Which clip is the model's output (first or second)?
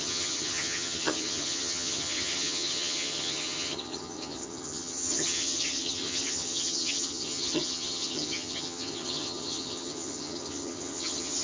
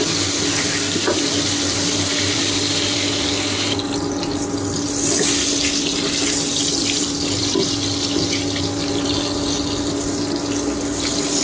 first